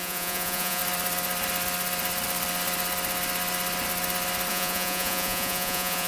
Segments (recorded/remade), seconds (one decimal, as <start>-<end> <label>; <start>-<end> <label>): 0.0-0.8 remade; 0.8-4.5 recorded; 4.5-6.1 remade